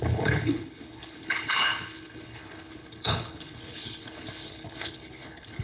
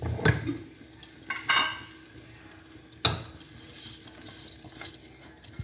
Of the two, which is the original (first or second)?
second